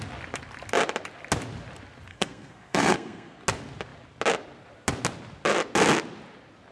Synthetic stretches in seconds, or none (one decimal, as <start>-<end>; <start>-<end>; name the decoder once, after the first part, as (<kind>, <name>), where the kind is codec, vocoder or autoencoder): 2.1-3.4 (codec, SNAC)